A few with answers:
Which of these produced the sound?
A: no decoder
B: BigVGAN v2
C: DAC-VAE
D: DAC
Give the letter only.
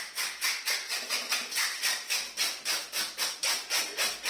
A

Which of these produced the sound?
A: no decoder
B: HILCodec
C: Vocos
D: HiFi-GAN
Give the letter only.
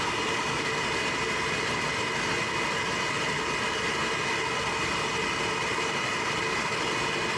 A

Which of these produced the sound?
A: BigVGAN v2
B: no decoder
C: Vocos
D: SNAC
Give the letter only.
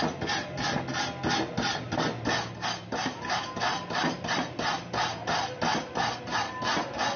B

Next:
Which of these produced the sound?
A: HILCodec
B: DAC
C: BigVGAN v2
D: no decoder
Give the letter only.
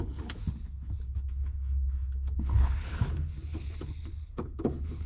A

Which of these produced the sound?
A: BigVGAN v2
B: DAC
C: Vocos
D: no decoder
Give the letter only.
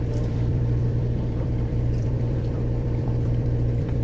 A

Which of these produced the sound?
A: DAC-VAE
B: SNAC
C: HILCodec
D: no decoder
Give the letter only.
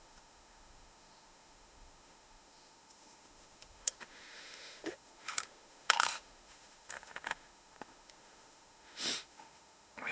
A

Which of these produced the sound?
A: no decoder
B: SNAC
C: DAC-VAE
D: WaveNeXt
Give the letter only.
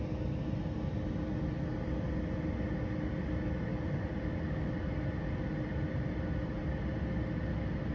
A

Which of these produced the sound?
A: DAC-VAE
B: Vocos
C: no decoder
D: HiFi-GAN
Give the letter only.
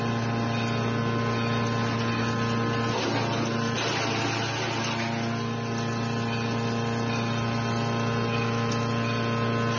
C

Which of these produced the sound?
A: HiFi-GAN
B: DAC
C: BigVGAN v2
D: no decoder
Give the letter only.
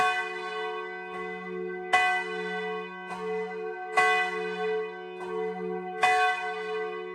D